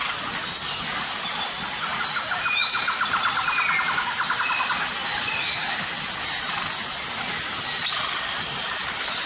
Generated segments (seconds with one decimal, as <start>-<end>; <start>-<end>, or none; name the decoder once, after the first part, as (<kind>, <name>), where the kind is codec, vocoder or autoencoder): none